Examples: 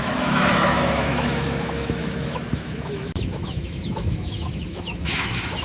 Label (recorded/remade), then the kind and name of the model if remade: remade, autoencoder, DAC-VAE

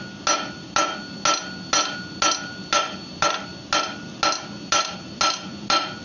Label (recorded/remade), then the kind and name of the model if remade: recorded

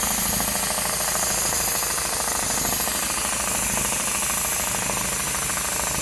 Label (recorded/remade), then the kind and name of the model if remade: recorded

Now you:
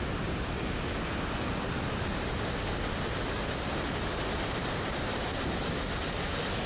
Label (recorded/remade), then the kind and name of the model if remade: recorded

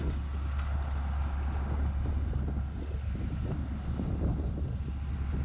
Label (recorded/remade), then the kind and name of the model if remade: recorded